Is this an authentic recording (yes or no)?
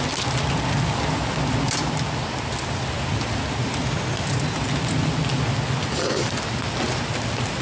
yes